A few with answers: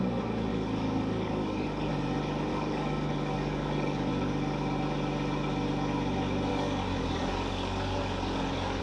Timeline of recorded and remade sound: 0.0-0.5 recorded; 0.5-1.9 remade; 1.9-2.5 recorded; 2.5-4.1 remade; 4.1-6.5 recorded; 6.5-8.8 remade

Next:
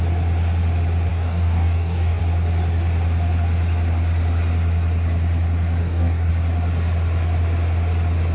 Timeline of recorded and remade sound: 0.0-1.1 recorded; 1.1-2.2 remade; 2.2-5.8 recorded; 5.8-6.3 remade; 6.3-8.3 recorded

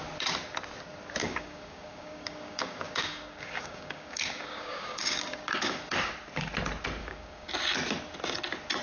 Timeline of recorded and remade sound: 0.0-1.2 recorded; 1.2-6.1 remade; 6.1-7.0 recorded; 7.0-7.5 remade; 7.5-8.8 recorded

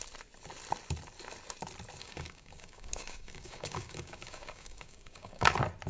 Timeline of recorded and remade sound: 0.0-2.0 recorded; 2.0-5.5 remade; 5.5-5.9 recorded

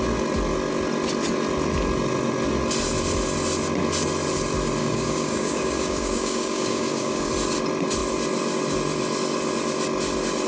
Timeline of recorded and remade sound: 0.0-4.8 recorded; 4.8-7.3 remade; 7.3-10.5 recorded

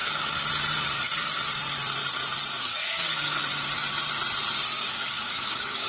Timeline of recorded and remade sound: 0.0-2.6 recorded; 2.6-3.4 remade; 3.4-4.8 recorded; 4.8-5.9 remade